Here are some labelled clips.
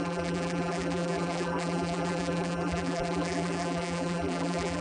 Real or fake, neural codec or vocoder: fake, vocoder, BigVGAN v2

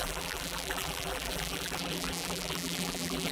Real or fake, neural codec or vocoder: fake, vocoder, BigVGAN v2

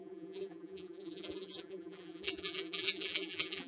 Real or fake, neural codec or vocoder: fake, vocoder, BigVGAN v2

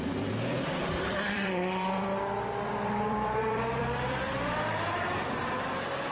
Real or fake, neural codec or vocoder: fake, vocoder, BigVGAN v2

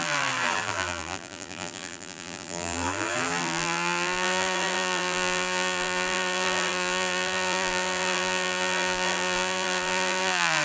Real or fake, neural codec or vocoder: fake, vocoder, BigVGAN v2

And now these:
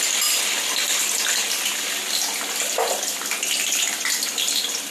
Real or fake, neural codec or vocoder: real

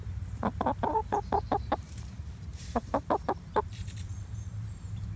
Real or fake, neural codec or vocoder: fake, vocoder, BigVGAN v2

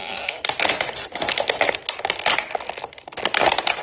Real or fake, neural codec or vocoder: real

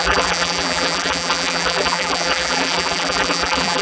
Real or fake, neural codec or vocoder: fake, vocoder, BigVGAN v2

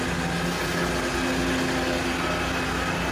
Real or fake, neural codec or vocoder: real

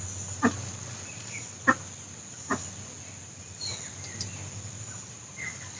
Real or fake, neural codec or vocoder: real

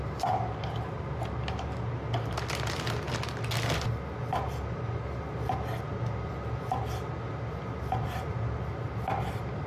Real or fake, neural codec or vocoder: real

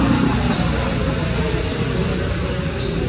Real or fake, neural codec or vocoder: real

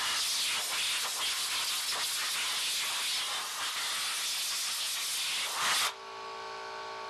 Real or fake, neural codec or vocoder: real